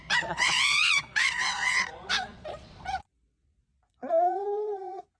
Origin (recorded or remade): remade